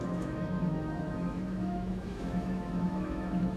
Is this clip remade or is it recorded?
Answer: remade